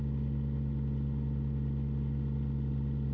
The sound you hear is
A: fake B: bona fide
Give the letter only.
B